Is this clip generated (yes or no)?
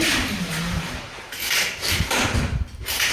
no